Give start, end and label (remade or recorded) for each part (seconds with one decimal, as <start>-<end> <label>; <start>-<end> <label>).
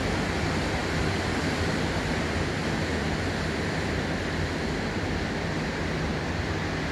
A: 0.0-6.9 recorded